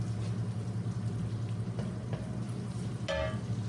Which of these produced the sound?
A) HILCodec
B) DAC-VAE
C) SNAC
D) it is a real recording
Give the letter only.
D